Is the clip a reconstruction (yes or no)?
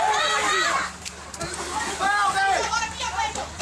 no